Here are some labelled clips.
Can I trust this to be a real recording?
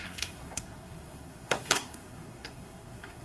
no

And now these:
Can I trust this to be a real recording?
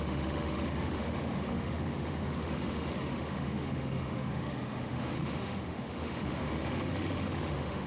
no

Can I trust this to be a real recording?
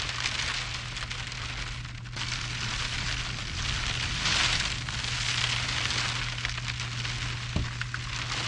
yes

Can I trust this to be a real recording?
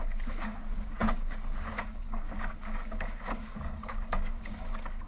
no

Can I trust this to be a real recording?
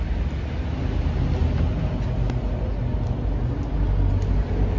yes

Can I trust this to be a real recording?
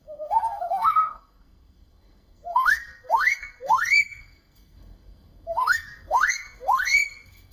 no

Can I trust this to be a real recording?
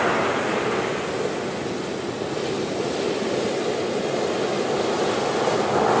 yes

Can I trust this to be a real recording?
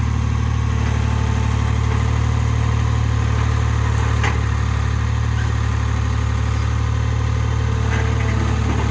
yes